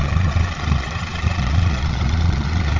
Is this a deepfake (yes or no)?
yes